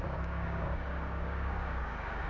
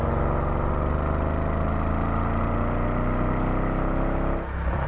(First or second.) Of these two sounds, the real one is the second